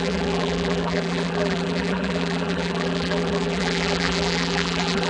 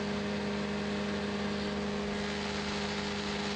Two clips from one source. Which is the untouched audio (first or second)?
second